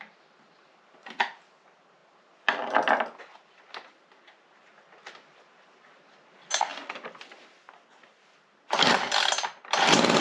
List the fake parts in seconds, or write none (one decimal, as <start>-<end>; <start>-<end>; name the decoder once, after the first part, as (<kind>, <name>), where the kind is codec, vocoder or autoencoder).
none